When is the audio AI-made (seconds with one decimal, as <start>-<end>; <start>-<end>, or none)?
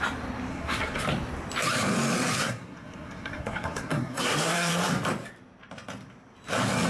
0.5-1.0; 2.4-4.7